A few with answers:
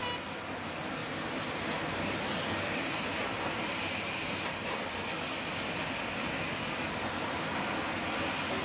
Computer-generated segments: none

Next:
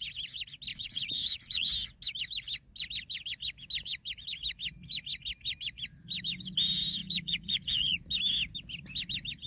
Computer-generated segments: 0.7-1.7; 7.0-8.1

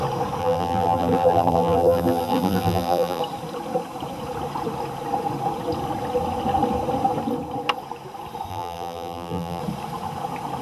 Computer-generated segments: 0.4-3.2; 8.5-9.6

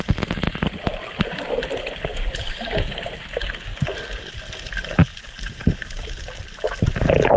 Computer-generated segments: 2.1-3.2

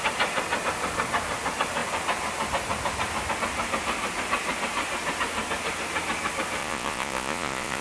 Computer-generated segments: 6.6-7.8

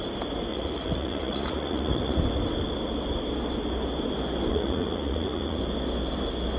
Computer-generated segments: 0.5-2.2; 4.5-5.6

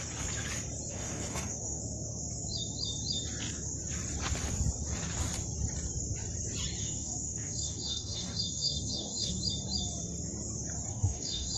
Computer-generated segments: 0.9-1.8; 6.8-9.4; 10.9-11.6